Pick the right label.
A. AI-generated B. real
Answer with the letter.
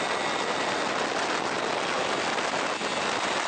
B